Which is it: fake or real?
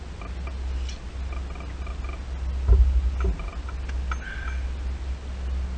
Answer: real